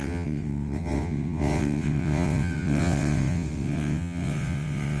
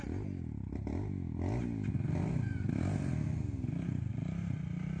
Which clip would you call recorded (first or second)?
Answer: second